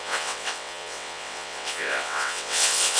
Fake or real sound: fake